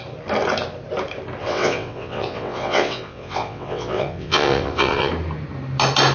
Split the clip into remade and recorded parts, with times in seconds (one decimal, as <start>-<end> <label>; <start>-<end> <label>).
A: 0.0-1.4 recorded; 1.4-5.1 remade; 5.1-6.1 recorded